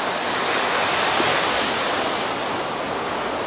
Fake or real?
real